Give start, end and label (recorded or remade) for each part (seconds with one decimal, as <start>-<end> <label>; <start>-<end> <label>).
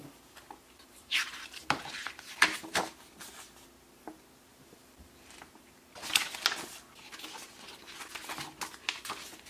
0.0-2.9 remade; 2.9-4.5 recorded; 4.5-5.3 remade; 5.3-9.5 recorded